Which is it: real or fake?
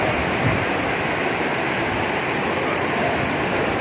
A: real